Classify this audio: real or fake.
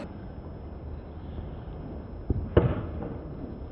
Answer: real